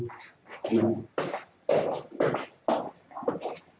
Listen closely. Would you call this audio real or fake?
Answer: real